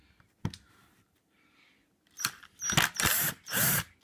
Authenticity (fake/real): real